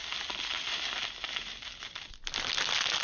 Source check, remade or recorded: recorded